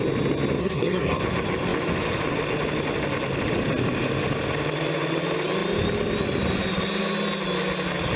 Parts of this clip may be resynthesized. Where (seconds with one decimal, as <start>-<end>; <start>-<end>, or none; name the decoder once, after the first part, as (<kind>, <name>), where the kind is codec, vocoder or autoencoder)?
0.6-1.2 (codec, SNAC)